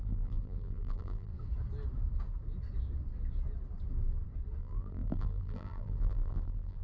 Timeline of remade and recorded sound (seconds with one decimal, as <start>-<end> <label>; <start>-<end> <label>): 0.0-1.3 remade; 1.3-4.6 recorded; 4.6-6.8 remade